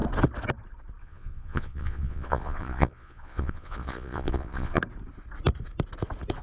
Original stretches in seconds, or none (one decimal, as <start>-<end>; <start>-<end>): 0.0-1.0; 4.8-6.4